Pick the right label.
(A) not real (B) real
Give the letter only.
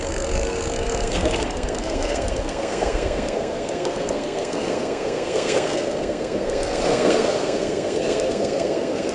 A